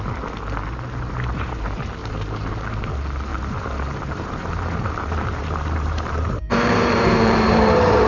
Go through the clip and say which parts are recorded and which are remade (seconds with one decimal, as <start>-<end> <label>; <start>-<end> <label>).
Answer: 0.0-2.0 recorded; 2.0-2.9 remade; 2.9-3.3 recorded; 3.3-8.1 remade